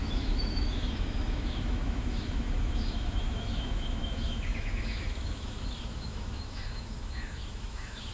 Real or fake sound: fake